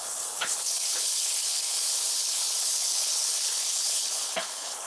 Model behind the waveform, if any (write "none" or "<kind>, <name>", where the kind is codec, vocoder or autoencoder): codec, HILCodec